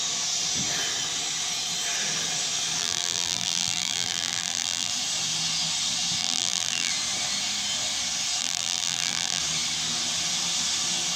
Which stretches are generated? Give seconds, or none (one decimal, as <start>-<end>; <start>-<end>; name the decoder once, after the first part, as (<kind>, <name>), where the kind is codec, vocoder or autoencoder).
2.8-4.9 (vocoder, BigVGAN v2); 6.2-6.9; 8.4-9.4

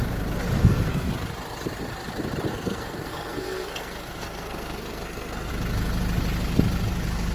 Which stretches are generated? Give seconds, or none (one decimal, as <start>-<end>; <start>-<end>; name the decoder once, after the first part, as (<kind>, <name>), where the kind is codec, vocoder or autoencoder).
0.6-1.1 (codec, SNAC); 2.5-5.5